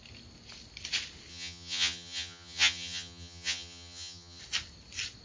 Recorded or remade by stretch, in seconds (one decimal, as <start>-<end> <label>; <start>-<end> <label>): 0.0-1.3 recorded; 1.3-4.4 remade; 4.4-5.2 recorded

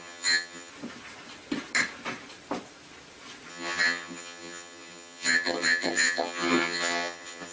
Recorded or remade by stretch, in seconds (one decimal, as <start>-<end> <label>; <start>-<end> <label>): 0.0-0.7 remade; 0.7-3.5 recorded; 3.5-7.5 remade